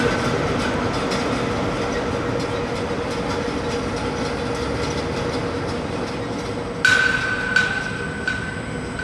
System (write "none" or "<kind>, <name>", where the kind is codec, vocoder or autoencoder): none